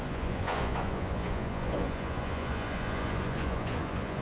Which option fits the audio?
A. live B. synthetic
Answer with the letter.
B